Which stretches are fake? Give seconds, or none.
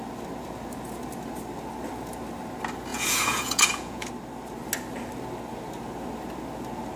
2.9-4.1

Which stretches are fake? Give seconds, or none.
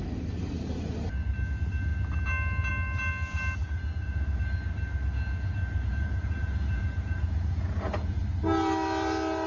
3.6-4.4; 5.9-8.2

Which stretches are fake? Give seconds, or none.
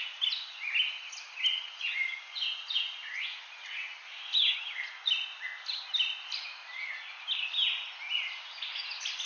1.5-5.1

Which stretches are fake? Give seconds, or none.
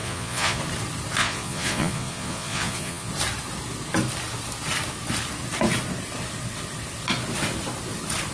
0.0-0.6; 1.2-3.1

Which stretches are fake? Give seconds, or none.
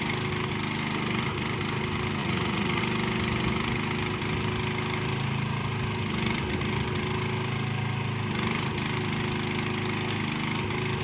2.2-2.8